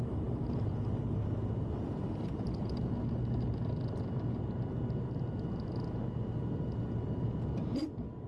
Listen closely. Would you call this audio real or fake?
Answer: real